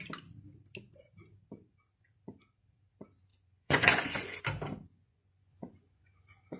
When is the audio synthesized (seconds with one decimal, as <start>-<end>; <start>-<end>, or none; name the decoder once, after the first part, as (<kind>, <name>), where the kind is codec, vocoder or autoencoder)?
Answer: 3.3-4.4 (vocoder, Vocos); 4.9-6.6